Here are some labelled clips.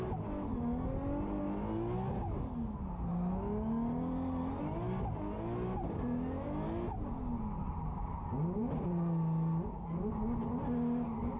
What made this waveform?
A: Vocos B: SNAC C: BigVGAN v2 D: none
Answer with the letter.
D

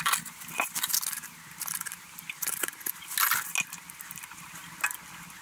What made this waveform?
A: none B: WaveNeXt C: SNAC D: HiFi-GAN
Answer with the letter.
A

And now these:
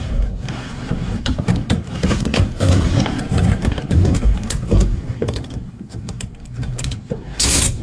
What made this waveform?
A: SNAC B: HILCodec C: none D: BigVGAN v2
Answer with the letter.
A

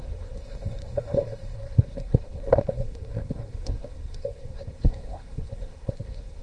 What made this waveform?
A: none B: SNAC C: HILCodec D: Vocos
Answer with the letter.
B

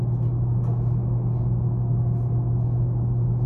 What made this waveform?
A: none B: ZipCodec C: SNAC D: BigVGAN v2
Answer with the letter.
A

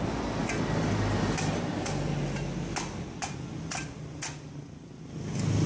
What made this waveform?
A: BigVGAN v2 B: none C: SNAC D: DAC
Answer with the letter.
B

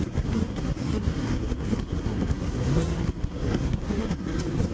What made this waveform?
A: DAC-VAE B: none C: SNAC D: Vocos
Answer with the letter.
C